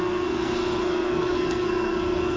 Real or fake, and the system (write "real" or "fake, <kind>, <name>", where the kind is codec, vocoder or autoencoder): fake, codec, SNAC